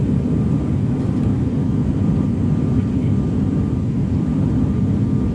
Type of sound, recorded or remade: remade